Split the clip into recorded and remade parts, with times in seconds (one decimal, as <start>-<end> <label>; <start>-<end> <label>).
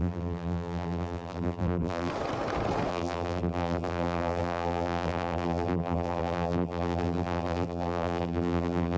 0.0-2.1 remade; 2.1-2.9 recorded; 2.9-9.0 remade